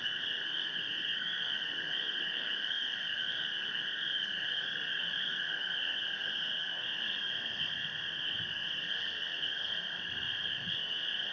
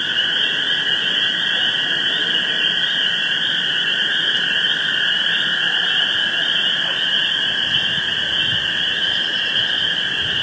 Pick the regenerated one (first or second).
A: first